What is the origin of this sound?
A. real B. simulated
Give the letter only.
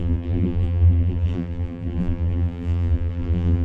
B